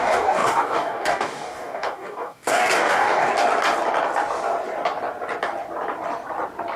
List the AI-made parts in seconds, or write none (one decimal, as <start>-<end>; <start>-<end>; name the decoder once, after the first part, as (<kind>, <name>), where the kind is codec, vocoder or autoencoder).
0.0-3.3 (codec, DAC)